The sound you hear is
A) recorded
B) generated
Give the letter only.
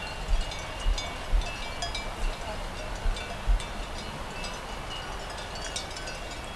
A